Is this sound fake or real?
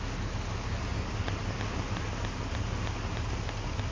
real